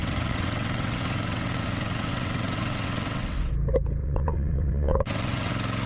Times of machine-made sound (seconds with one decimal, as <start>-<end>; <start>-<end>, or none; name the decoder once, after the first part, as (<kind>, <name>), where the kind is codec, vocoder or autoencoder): 0.0-3.5 (vocoder, WaveNeXt); 4.0-5.5